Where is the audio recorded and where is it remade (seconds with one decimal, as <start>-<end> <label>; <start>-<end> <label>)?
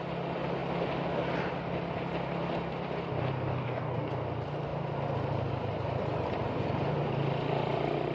0.0-3.5 recorded; 3.5-4.1 remade; 4.1-8.1 recorded